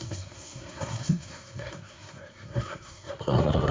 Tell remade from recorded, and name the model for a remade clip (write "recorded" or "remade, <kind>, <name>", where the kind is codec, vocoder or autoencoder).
remade, codec, SNAC